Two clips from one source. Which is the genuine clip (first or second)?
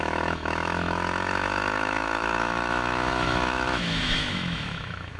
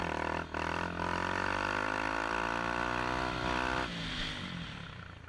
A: second